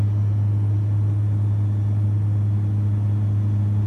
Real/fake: real